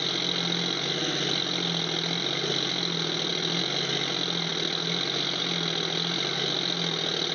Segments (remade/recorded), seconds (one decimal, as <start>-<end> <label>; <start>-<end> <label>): 0.0-7.3 recorded